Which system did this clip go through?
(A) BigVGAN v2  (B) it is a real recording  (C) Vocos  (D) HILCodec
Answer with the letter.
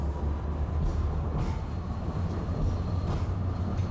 B